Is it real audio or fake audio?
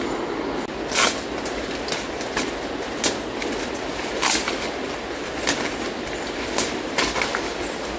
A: real